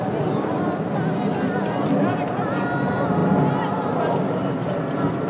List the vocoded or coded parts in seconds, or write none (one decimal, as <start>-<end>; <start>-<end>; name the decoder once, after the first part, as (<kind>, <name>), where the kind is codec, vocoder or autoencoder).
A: none